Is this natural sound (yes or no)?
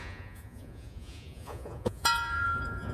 no